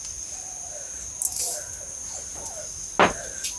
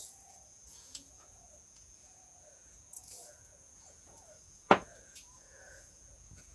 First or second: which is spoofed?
second